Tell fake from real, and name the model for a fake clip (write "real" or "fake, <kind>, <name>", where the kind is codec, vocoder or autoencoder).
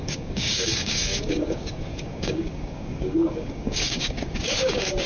fake, codec, DAC